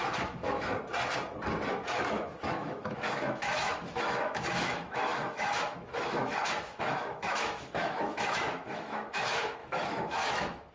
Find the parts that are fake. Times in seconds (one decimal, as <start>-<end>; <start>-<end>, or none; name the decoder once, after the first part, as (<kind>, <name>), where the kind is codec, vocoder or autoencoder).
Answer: 0.0-0.7 (autoencoder, DAC-VAE); 1.7-10.7